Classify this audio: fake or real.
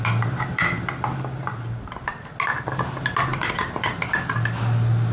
real